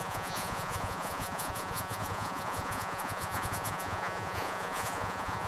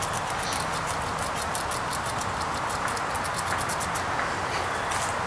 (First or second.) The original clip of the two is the second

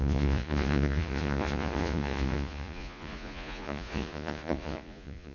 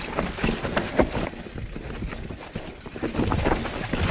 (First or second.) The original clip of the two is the second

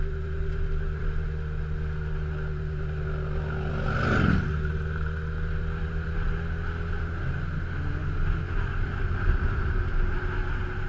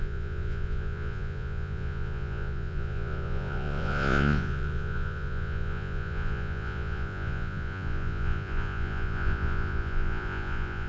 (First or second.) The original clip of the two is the first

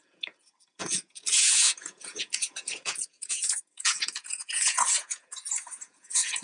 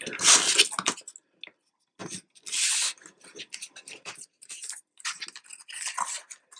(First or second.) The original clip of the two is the second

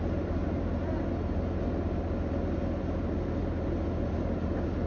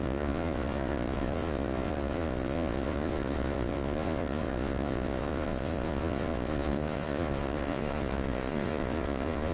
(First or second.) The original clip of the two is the first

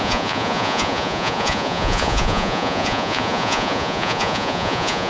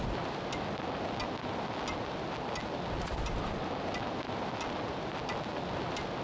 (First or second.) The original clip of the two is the second